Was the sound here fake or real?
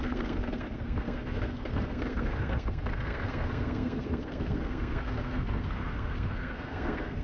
fake